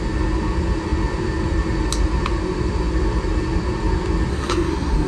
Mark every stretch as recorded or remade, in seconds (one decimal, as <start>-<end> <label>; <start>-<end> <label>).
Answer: 0.0-4.3 recorded; 4.3-5.1 remade